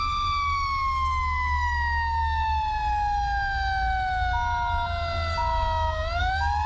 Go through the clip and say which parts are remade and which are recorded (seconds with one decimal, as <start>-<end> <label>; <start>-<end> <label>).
0.0-6.7 recorded